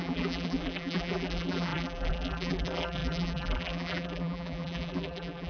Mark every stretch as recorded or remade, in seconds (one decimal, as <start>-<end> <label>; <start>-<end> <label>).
0.0-5.5 remade